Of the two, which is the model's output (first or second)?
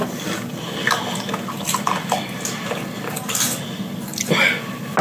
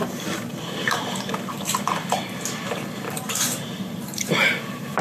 second